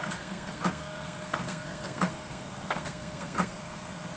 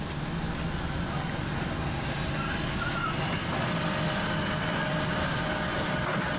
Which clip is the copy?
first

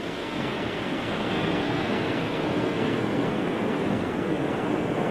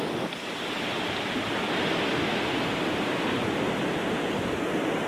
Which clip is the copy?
first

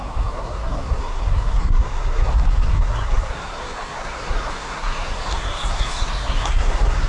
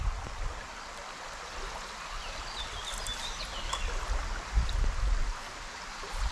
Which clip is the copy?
first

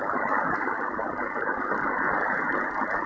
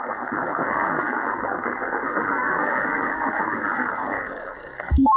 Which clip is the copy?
second